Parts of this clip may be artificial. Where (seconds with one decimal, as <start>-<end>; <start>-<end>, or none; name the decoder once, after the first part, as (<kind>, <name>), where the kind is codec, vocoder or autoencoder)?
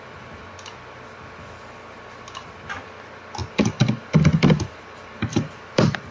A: 3.4-6.1 (vocoder, BigVGAN v2)